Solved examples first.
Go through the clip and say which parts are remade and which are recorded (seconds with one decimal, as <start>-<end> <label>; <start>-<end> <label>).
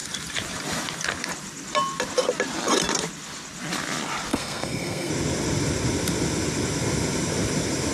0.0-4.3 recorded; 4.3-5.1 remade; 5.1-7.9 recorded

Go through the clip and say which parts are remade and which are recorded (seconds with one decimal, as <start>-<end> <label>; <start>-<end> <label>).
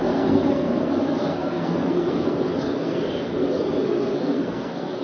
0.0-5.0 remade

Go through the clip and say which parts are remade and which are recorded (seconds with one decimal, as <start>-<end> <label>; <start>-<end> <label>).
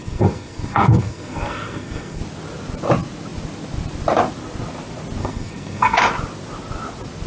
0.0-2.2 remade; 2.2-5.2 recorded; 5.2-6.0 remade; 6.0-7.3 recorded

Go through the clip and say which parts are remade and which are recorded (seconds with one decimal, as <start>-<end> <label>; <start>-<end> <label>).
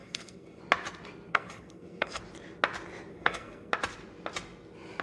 0.0-0.6 remade; 0.6-1.3 recorded; 1.3-2.2 remade; 2.2-3.1 recorded; 3.1-3.7 remade; 3.7-5.0 recorded